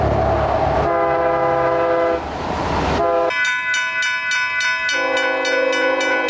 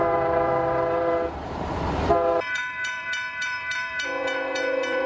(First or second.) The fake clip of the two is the second